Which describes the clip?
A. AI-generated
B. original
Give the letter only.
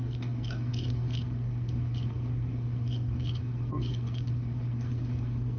A